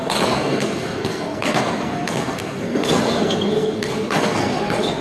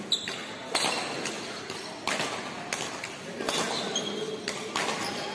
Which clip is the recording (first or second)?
second